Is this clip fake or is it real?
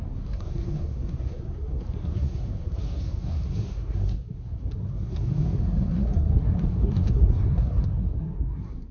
fake